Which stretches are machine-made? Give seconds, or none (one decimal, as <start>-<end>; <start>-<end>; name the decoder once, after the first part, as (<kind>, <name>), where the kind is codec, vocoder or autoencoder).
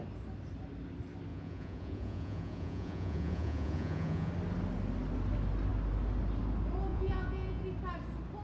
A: 1.3-4.3 (vocoder, Vocos); 6.9-7.6